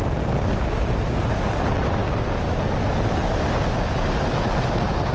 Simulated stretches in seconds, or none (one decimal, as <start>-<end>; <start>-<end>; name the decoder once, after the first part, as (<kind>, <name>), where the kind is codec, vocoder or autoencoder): 0.0-2.0 (vocoder, BigVGAN v2)